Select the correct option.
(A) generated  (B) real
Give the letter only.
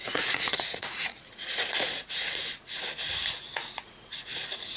A